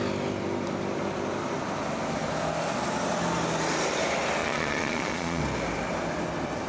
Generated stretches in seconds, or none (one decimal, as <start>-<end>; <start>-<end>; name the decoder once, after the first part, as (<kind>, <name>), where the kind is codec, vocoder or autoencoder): 4.4-5.4 (vocoder, Vocos)